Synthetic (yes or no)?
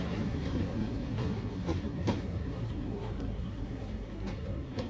yes